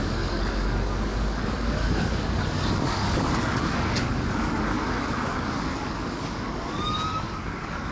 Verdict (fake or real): fake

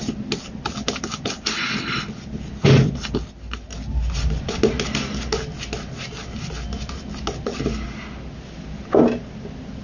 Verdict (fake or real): real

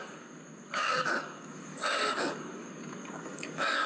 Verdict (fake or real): fake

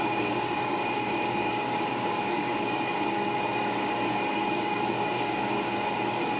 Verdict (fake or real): fake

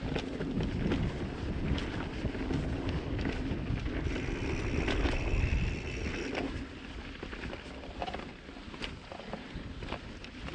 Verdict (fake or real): real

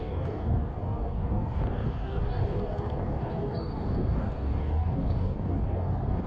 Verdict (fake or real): fake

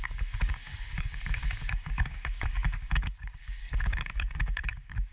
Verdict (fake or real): fake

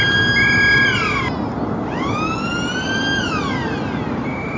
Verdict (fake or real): real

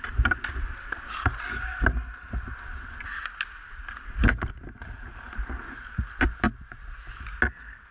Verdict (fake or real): real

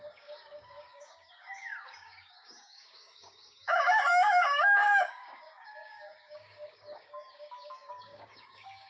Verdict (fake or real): fake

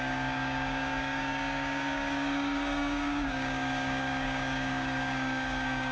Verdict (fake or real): fake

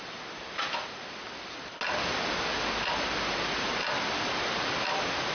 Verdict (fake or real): real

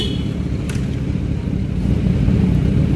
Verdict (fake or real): real